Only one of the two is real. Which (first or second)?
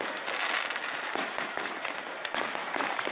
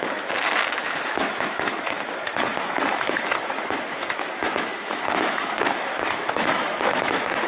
first